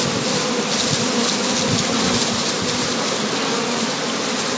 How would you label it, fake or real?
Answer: real